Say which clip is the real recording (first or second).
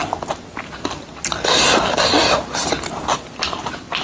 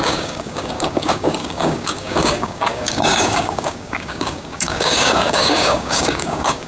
first